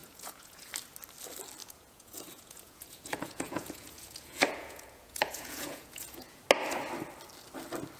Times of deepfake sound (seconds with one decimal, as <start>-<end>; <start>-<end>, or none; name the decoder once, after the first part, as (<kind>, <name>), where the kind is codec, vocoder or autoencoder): 0.0-0.7 (vocoder, Vocos); 1.6-6.4